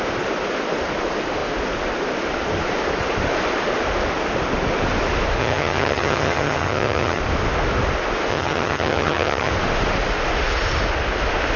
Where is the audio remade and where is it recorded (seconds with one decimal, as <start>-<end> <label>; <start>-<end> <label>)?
0.0-5.4 recorded; 5.4-7.2 remade; 7.2-8.3 recorded; 8.3-9.5 remade; 9.5-11.6 recorded